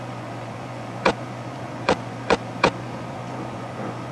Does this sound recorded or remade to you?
remade